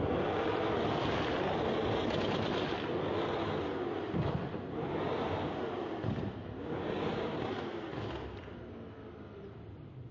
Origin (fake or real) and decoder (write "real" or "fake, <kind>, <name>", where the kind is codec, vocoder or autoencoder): real